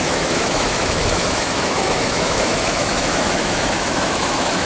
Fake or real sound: fake